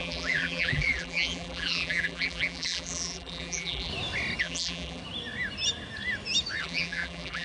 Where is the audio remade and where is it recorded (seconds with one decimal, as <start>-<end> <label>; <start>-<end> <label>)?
0.0-3.9 remade; 3.9-4.4 recorded; 4.4-5.0 remade; 5.0-6.6 recorded; 6.6-7.4 remade